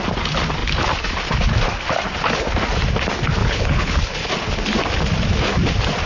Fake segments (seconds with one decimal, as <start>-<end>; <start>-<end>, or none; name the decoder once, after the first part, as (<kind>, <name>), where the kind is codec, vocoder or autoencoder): 3.4-4.3 (codec, HILCodec)